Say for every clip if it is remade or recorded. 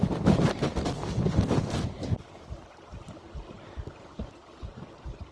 recorded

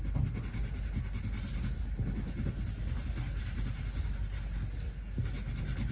recorded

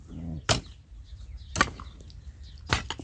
recorded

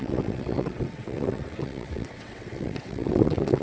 remade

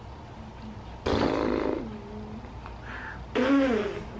recorded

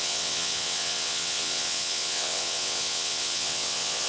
remade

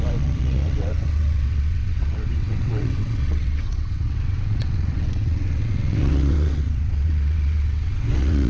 remade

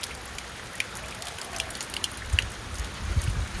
recorded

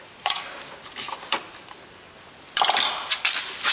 recorded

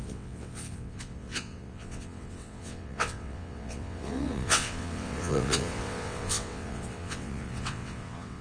remade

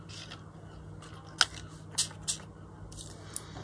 recorded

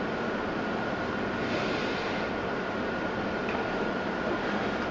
recorded